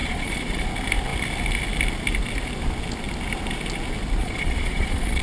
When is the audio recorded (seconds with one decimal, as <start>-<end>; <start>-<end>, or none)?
0.7-4.2

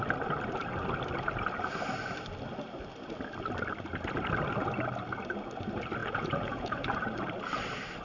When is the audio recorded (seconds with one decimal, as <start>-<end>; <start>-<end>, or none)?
0.0-6.0; 6.8-8.0

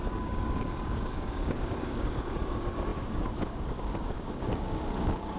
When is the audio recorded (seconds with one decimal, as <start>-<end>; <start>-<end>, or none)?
none

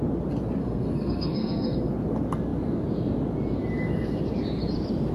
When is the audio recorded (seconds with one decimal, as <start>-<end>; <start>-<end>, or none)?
0.0-0.6; 1.9-5.1

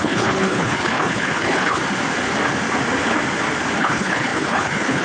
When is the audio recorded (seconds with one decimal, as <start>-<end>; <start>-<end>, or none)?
1.8-3.8

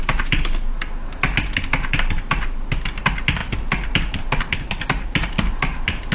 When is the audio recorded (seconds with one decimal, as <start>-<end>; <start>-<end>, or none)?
0.0-6.1